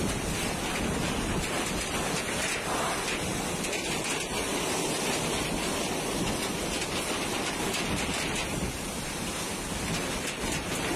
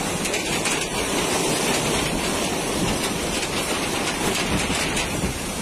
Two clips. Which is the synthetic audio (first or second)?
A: second